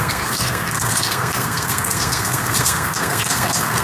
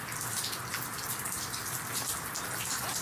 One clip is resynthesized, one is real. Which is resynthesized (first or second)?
first